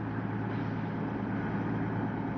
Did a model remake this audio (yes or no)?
no